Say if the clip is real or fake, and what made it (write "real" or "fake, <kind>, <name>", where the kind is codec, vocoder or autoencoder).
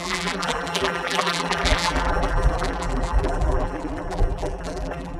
fake, vocoder, BigVGAN v2